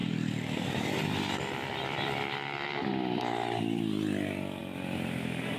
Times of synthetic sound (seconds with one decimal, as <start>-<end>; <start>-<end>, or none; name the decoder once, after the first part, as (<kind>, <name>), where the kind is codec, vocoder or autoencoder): 0.0-2.9 (vocoder, BigVGAN v2)